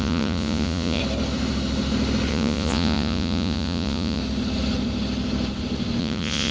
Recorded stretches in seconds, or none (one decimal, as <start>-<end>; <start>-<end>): 1.0-2.3; 4.2-6.0